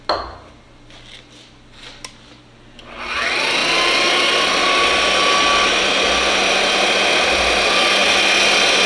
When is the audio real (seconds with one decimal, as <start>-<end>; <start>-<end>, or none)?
0.0-8.9